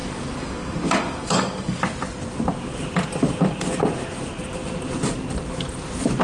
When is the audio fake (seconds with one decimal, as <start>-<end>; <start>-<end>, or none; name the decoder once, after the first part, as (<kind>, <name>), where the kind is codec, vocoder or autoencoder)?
0.0-1.8 (codec, DAC)